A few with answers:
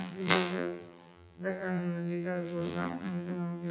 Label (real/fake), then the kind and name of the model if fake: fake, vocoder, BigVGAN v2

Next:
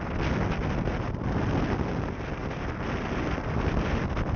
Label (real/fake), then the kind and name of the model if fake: real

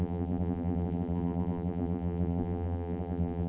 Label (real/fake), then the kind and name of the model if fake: fake, vocoder, BigVGAN v2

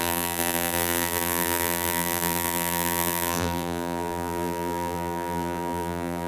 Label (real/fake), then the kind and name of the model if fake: fake, vocoder, BigVGAN v2